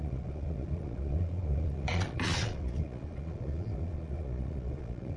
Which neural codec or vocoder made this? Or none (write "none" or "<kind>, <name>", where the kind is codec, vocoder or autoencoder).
vocoder, Vocos